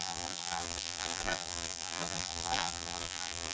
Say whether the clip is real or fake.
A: fake